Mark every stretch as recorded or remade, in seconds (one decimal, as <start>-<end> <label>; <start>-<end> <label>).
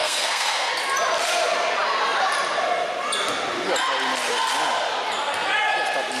0.0-0.7 remade; 0.7-6.2 recorded